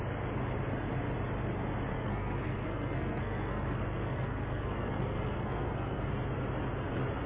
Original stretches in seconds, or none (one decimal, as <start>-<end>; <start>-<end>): 0.0-1.9; 6.1-7.3